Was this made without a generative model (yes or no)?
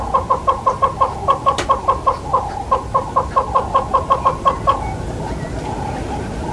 yes